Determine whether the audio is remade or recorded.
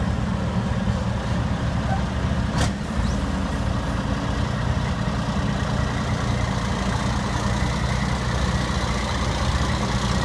recorded